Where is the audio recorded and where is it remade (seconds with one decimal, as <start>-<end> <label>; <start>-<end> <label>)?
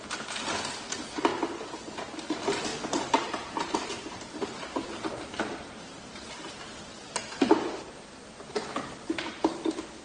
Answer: 0.0-2.7 recorded; 2.7-6.5 remade; 6.5-10.0 recorded